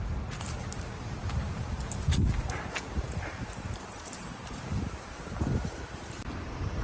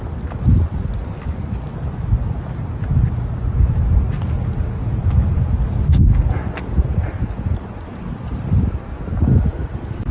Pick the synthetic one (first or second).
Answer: first